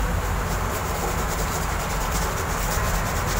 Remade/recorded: recorded